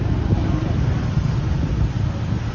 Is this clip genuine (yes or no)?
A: yes